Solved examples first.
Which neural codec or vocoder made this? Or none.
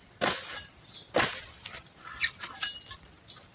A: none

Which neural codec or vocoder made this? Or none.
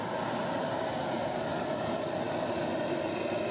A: none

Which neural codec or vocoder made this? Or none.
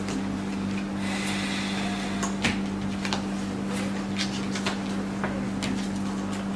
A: none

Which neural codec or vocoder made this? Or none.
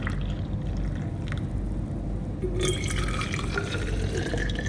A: none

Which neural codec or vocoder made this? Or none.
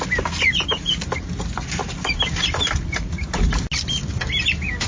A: none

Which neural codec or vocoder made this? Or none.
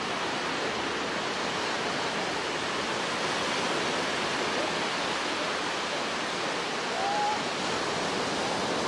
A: none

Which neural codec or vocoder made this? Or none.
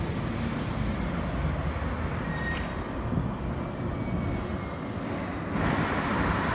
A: none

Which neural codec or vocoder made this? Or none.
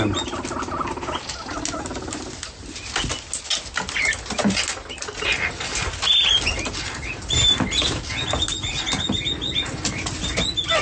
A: none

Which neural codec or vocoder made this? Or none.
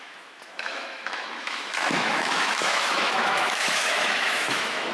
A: autoencoder, DAC-VAE